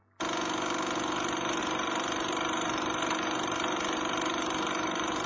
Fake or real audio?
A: real